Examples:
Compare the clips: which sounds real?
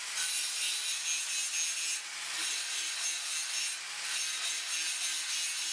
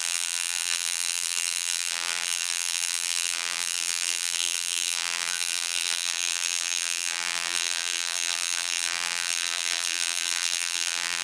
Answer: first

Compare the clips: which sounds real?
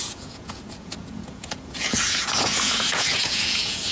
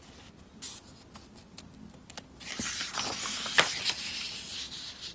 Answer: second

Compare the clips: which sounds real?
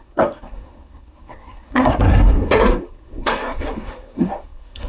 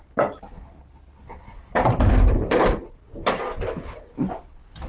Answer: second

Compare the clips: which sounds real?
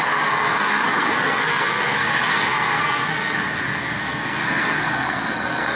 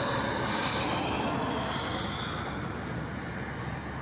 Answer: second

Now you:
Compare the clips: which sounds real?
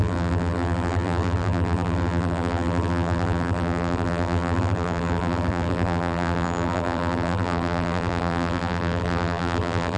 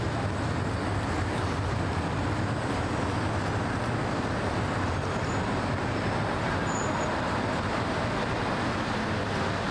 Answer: second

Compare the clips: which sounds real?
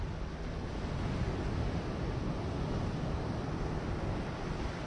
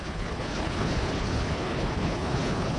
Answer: first